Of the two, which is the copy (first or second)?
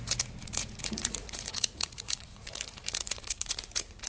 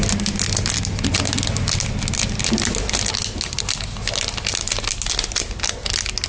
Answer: first